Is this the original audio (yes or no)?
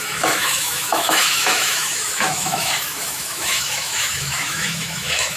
no